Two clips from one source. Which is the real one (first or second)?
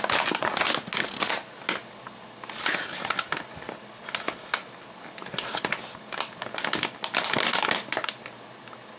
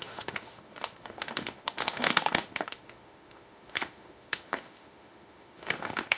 first